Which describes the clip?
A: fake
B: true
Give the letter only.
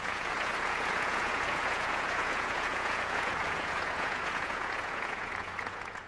A